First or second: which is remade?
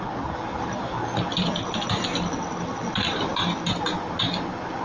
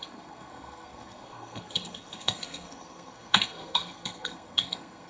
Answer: second